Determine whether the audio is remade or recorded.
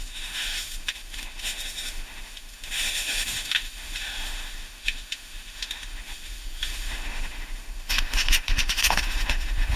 remade